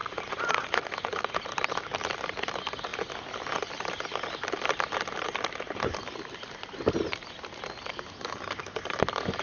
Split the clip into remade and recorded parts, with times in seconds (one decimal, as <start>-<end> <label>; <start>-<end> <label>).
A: 0.0-1.4 remade; 1.4-9.4 recorded